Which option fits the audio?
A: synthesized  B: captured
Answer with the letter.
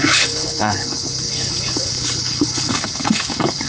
A